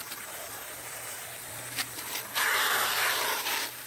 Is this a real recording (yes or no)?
no